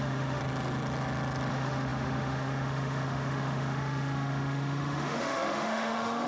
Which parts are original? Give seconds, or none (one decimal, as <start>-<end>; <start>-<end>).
0.4-1.5